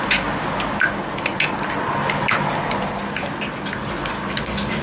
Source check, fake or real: real